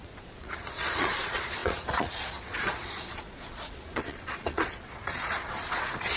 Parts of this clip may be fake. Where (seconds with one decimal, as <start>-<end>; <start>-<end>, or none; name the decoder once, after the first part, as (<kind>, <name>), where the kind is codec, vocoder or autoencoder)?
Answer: 0.0-6.2 (vocoder, Vocos)